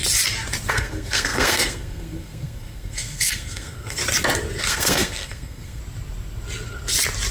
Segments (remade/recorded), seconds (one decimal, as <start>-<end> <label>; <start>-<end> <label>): 0.0-0.7 recorded; 0.7-4.0 remade; 4.0-4.6 recorded; 4.6-5.8 remade; 5.8-7.3 recorded